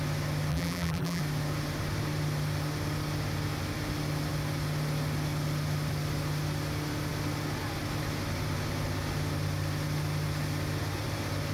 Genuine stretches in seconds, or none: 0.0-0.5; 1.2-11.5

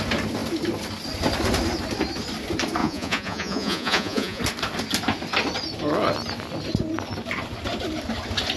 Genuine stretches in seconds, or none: 0.0-2.8; 4.4-8.6

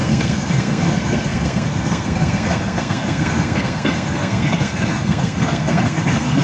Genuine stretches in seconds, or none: none